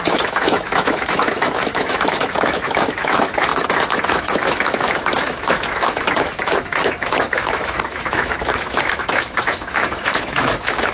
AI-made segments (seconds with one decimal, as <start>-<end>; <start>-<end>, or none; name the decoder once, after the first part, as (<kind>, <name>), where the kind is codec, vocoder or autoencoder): 0.0-10.9 (autoencoder, DAC-VAE)